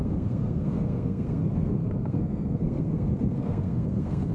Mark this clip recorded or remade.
remade